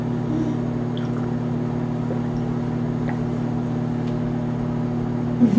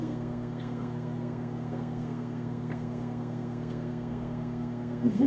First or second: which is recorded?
first